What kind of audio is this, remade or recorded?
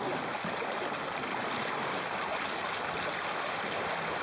recorded